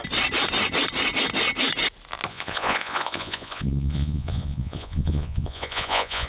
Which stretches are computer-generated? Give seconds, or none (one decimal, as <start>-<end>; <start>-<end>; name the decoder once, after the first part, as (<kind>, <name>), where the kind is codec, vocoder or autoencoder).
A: 2.3-6.3 (vocoder, Vocos)